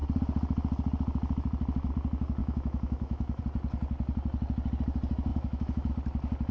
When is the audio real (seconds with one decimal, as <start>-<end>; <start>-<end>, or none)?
0.0-2.4; 3.4-5.3; 5.9-6.5